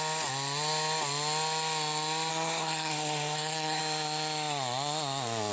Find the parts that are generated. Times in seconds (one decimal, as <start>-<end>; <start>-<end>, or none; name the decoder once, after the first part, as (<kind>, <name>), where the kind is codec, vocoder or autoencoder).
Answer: 2.3-3.8 (codec, SNAC)